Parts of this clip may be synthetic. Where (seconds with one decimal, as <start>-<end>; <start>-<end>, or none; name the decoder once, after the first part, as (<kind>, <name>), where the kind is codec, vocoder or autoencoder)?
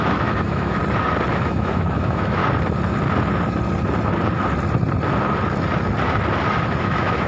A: 0.0-0.8 (autoencoder, DAC-VAE); 1.3-2.4; 6.8-7.3